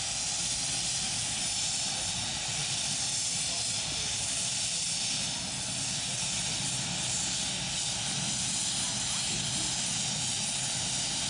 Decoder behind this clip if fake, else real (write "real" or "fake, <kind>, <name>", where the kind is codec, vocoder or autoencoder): real